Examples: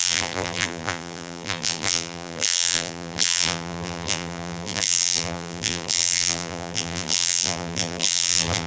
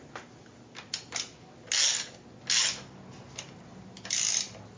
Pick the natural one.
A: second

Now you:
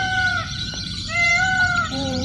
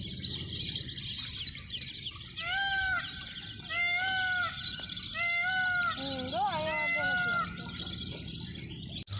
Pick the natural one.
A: second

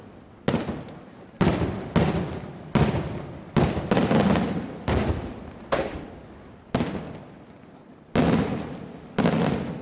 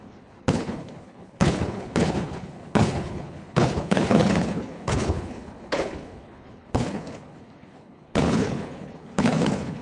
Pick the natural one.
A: first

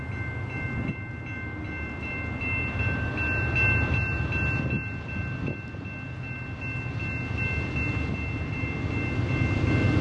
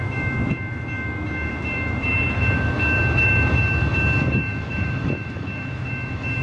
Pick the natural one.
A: first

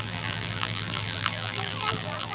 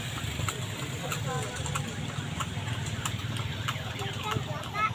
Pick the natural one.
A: second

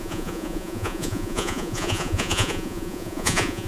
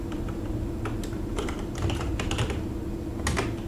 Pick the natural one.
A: second